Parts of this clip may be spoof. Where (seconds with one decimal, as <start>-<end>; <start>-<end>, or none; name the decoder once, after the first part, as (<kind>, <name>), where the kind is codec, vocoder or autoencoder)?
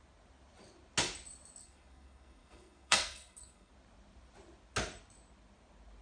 1.6-3.7 (codec, SNAC)